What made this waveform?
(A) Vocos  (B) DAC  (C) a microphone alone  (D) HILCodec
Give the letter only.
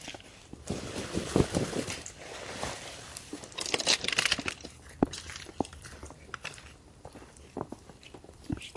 C